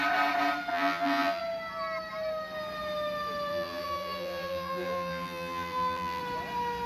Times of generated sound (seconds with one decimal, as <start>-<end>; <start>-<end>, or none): 0.7-1.4; 3.5-6.2